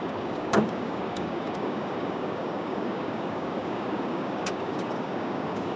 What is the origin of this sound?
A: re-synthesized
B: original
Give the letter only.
A